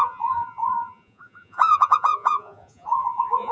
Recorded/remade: remade